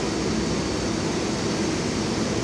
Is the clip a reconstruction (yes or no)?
no